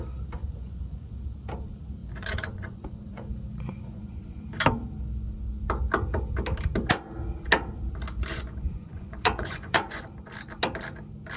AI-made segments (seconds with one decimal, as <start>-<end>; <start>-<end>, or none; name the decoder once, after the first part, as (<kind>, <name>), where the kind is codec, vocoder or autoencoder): 0.4-1.1 (vocoder, Vocos); 2.0-4.4; 8.3-10.0

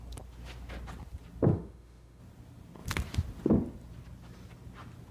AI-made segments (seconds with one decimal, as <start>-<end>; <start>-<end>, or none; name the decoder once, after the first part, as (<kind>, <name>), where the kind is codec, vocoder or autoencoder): 1.5-2.2 (autoencoder, DAC-VAE)

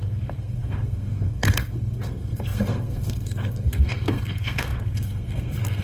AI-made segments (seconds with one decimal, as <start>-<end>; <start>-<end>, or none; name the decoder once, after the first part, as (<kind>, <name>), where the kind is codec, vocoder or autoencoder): 0.0-5.8 (codec, SNAC)

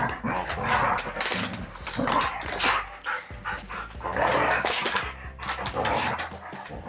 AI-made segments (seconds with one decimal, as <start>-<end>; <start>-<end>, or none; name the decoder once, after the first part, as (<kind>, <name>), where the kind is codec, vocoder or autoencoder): none

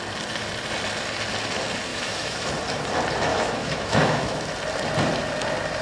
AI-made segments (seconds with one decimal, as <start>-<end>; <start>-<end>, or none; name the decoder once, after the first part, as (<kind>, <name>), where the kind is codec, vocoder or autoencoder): 1.9-2.5 (autoencoder, DAC-VAE); 3.3-4.4